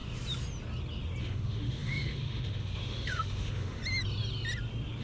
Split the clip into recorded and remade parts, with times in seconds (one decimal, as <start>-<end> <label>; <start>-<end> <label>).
0.0-1.2 recorded; 1.2-3.8 remade; 3.8-5.0 recorded